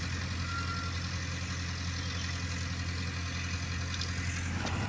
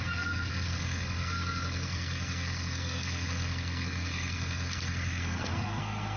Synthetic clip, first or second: second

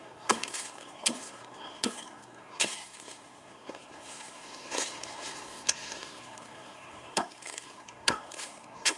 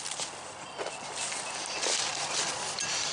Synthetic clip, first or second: first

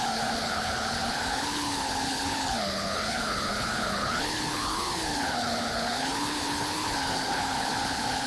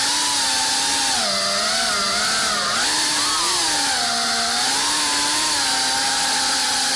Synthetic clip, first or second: first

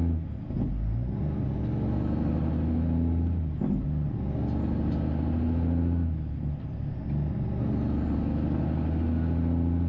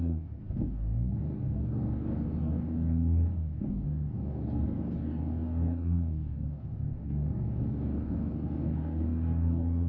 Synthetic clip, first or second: second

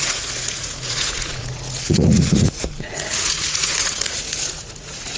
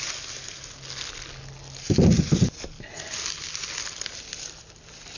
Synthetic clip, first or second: first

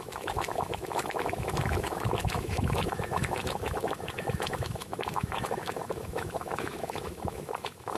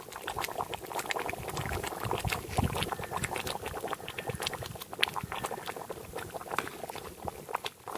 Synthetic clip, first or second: first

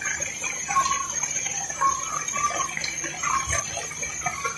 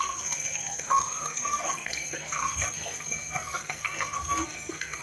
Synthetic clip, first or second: second